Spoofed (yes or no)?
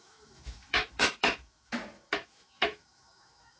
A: yes